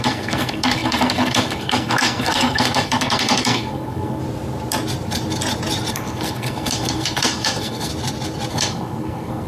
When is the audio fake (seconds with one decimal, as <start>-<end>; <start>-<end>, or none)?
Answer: 0.0-4.2; 5.9-7.9; 8.5-9.5

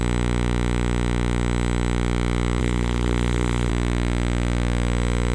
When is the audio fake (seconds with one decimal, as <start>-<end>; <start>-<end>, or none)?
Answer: 2.6-3.7

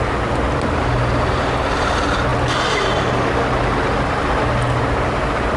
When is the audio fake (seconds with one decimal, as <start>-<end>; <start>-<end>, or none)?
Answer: none

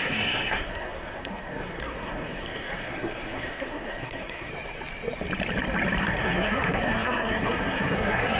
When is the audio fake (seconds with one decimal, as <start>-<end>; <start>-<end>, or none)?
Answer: 0.0-4.5; 6.0-8.4

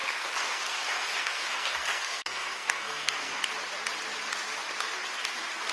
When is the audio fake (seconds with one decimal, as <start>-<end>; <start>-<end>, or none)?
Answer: 0.0-3.4

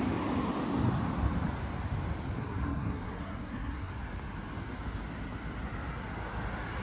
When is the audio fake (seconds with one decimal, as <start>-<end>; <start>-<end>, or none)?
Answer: 2.4-3.9

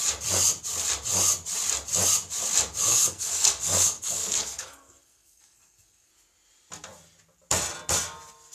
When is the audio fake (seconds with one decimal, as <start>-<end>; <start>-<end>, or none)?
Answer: 2.9-6.1

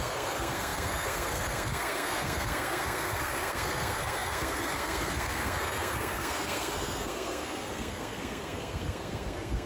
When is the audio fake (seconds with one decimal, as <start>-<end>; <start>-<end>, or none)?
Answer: 0.0-9.7